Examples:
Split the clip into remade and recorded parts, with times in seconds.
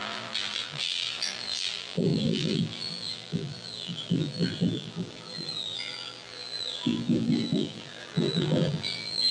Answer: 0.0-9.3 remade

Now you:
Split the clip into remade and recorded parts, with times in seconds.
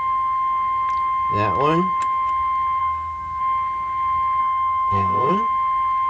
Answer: 0.0-2.8 recorded; 2.8-3.4 remade; 3.4-4.4 recorded; 4.4-5.3 remade; 5.3-6.1 recorded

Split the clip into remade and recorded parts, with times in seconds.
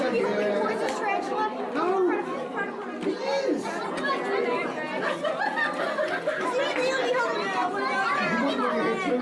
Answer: 0.0-9.2 recorded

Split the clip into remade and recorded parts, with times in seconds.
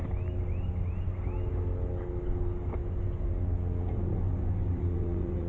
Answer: 0.0-2.8 recorded; 2.8-3.3 remade; 3.3-4.1 recorded; 4.1-5.5 remade